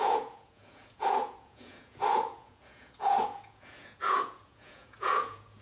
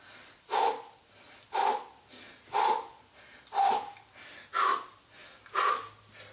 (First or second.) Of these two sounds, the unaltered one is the second